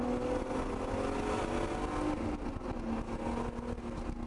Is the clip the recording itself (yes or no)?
yes